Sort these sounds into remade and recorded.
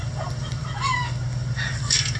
remade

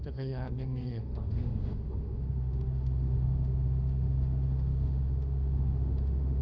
remade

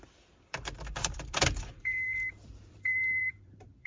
remade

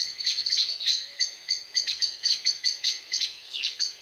remade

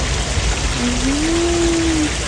recorded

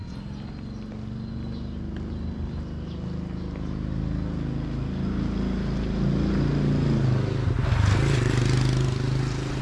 recorded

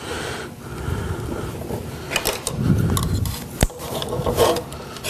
recorded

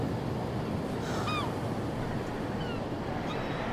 recorded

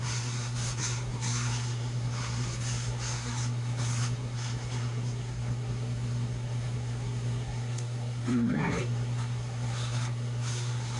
remade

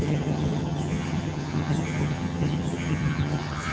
remade